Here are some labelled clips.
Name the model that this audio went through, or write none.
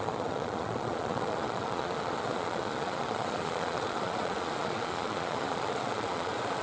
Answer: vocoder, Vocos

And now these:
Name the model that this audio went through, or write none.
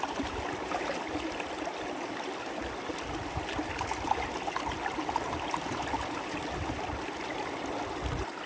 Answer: none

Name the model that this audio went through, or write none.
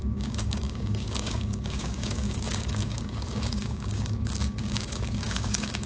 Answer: codec, DAC